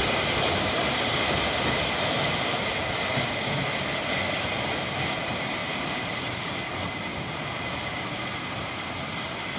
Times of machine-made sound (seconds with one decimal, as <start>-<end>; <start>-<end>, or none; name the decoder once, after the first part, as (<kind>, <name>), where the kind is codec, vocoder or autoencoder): 5.6-6.5 (vocoder, BigVGAN v2); 7.1-8.7